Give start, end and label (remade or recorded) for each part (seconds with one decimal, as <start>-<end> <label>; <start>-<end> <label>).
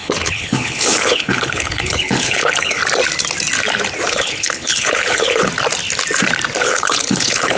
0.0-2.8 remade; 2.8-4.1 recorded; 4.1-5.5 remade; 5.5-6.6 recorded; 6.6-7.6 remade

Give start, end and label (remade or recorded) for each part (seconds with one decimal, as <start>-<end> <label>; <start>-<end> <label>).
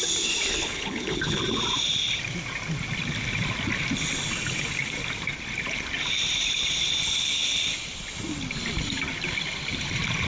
0.0-0.5 recorded; 0.5-1.4 remade; 1.4-10.3 recorded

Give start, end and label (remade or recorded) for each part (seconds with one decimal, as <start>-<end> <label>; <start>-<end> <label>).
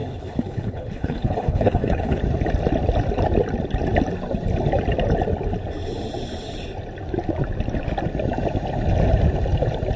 0.0-2.2 remade; 2.2-10.0 recorded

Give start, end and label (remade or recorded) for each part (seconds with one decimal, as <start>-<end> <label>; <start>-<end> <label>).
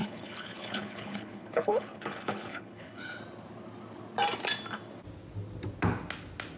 0.0-3.2 remade; 3.2-6.6 recorded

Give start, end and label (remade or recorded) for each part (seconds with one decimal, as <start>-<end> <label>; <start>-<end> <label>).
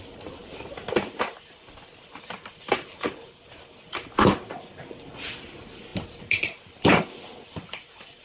0.0-8.2 recorded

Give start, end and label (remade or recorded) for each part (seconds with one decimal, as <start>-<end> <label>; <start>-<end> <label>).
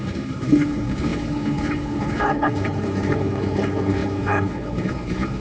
0.0-5.4 remade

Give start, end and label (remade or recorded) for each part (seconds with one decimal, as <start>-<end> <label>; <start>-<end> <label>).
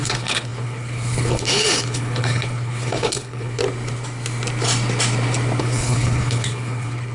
0.0-3.6 remade; 3.6-5.6 recorded; 5.6-7.1 remade